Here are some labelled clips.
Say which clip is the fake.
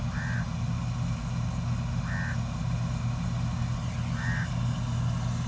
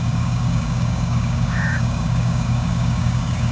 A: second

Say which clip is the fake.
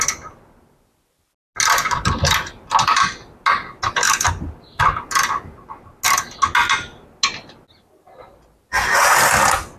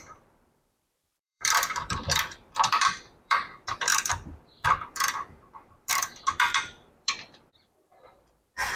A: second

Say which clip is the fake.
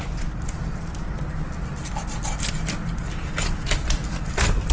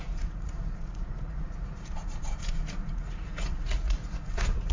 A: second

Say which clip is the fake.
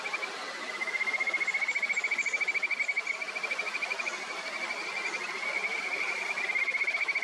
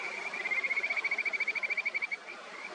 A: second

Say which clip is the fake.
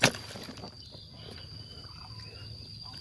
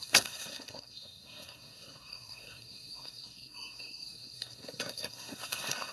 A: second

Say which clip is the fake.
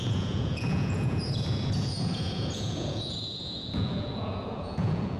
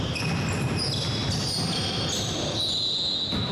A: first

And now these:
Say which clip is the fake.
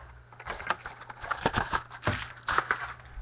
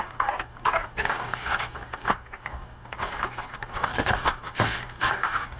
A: second